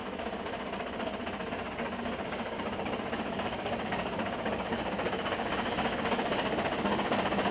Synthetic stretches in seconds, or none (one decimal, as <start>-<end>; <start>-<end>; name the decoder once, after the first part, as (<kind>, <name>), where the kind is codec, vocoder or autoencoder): 1.5-7.5 (codec, DAC)